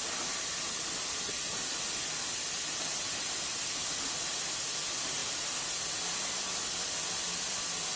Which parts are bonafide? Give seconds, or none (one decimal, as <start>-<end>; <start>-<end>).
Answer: 0.0-8.0